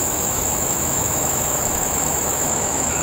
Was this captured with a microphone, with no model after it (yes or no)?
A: no